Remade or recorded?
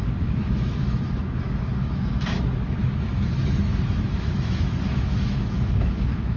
remade